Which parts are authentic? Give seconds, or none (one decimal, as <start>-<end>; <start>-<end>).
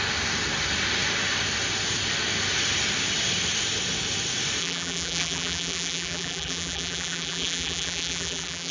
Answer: 0.0-4.6